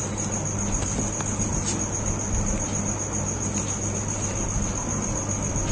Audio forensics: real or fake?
real